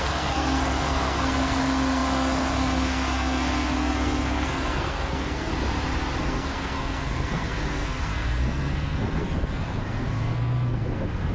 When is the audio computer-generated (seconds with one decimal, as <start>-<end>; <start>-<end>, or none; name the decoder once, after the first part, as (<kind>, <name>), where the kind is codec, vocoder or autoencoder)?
0.0-5.5 (codec, SNAC); 6.2-11.3

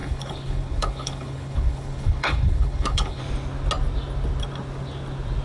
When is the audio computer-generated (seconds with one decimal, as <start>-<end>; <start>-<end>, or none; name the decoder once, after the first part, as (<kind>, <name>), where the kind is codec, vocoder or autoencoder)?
0.0-3.2 (codec, HILCodec)